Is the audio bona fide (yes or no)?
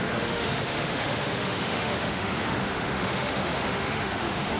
no